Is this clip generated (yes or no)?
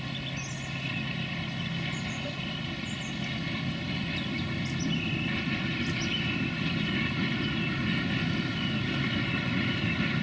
no